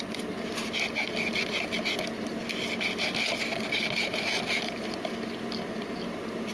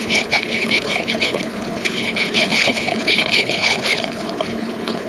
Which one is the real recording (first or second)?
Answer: first